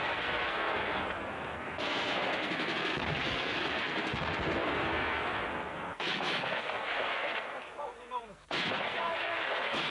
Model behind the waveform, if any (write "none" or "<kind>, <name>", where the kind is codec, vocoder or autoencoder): codec, SNAC